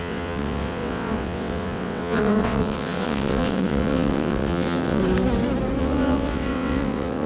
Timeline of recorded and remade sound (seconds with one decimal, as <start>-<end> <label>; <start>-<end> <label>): 0.0-5.0 remade; 5.0-5.8 recorded; 5.8-7.3 remade